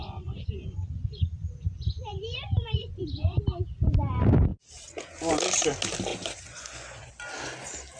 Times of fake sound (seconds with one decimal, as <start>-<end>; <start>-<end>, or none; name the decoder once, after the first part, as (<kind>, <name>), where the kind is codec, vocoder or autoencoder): 0.0-3.4 (vocoder, Vocos); 6.1-7.1